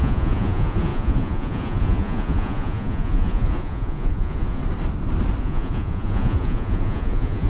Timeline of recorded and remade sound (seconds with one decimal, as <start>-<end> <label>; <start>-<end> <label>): 0.0-4.6 remade; 4.6-5.4 recorded; 5.4-7.5 remade